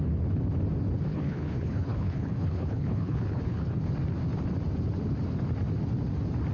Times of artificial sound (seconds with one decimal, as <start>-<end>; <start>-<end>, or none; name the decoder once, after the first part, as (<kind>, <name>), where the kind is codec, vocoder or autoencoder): 1.1-3.9 (codec, HILCodec)